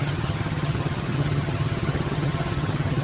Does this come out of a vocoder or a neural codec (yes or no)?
yes